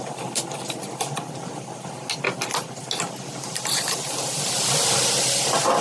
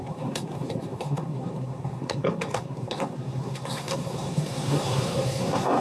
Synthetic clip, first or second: second